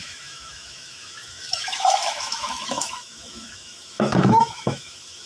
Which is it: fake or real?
fake